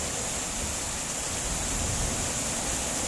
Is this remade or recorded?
recorded